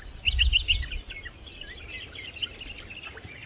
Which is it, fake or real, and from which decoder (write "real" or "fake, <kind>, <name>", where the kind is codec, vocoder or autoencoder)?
real